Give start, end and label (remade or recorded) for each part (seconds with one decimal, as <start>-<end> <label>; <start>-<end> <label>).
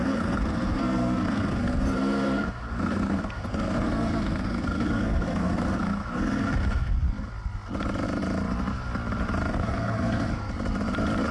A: 0.0-7.0 remade; 7.0-9.5 recorded; 9.5-10.5 remade; 10.5-11.3 recorded